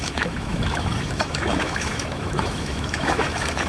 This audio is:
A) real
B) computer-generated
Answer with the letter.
B